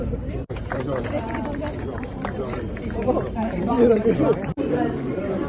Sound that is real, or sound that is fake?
fake